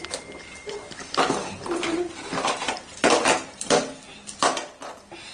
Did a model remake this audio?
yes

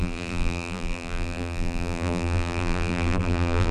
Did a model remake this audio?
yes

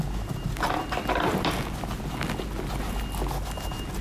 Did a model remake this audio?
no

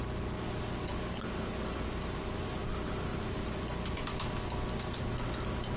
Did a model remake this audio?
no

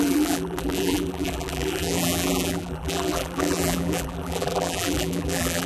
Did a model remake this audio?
yes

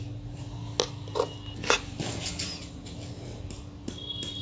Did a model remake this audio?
no